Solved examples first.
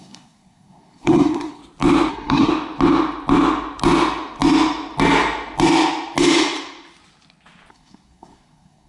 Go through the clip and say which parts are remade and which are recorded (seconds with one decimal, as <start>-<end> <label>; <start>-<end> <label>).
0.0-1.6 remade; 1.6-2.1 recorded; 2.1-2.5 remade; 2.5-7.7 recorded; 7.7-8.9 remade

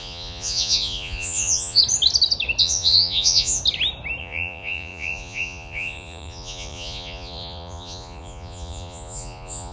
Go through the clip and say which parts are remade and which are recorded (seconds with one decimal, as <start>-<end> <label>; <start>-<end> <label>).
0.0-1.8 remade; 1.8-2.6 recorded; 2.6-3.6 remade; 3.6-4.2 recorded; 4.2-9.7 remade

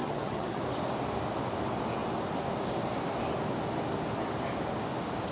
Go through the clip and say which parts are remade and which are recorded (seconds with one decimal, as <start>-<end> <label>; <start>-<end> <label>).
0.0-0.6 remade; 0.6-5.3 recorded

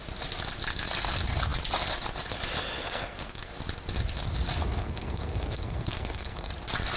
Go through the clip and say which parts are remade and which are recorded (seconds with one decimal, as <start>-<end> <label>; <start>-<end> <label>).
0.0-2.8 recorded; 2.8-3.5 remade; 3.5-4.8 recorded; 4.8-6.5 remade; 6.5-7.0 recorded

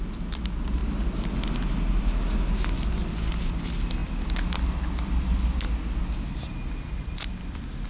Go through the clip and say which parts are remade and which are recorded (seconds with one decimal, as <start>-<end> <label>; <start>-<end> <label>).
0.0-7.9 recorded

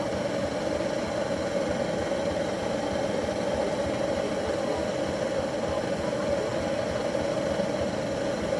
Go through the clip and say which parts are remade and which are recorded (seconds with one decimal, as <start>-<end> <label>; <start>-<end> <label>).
0.0-8.6 recorded